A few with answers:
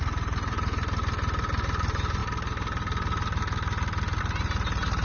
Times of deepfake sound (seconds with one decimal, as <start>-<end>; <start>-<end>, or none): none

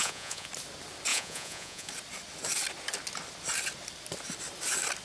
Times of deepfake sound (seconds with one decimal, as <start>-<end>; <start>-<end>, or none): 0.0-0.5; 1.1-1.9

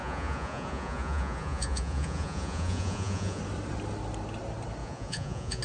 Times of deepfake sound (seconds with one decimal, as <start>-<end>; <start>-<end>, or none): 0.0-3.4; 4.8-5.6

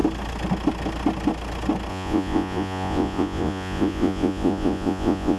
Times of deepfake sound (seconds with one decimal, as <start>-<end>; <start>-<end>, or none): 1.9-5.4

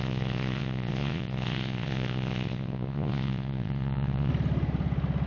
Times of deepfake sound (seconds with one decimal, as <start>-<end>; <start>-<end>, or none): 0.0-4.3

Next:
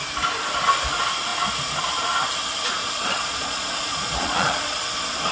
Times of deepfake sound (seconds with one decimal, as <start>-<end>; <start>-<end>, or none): 2.8-4.8

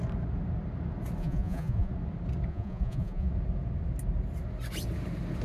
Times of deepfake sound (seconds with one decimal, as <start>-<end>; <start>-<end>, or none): 1.2-1.9; 2.5-3.3